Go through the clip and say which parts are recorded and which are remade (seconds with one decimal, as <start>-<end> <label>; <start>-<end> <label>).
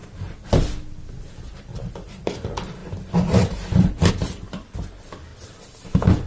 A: 0.0-2.8 remade; 2.8-4.1 recorded; 4.1-5.3 remade; 5.3-6.3 recorded